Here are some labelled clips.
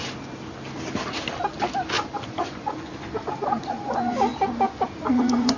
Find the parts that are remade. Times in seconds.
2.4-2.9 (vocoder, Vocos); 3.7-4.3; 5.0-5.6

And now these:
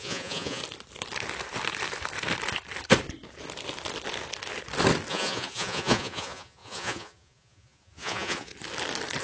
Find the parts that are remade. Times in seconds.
0.0-0.6 (vocoder, Vocos); 5.1-8.5

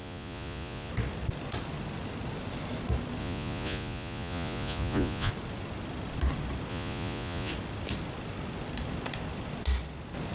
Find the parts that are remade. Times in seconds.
0.0-0.9 (vocoder, Vocos); 3.2-5.3; 6.7-7.5

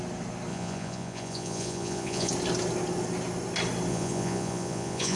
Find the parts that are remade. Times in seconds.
0.5-2.3 (vocoder, Vocos); 3.9-5.2

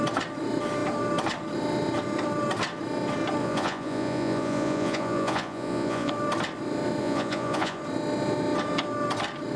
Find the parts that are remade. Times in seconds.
3.4-6.1 (vocoder, Vocos); 7.0-7.8

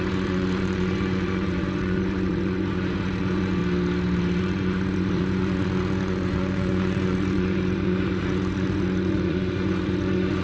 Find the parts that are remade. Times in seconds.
0.0-3.6 (vocoder, Vocos); 4.4-10.4